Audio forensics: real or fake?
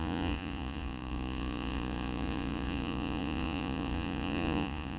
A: fake